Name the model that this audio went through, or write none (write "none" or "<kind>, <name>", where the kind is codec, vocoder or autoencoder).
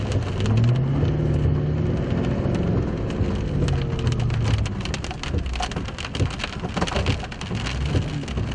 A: none